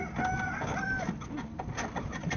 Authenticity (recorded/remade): recorded